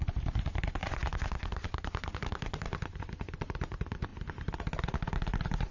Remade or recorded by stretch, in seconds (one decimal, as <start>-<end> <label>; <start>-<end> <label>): 0.0-4.1 remade; 4.1-4.8 recorded; 4.8-5.7 remade